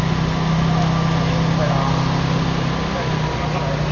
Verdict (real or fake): real